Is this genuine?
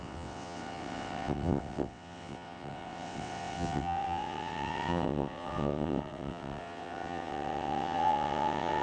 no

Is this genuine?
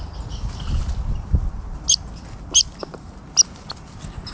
yes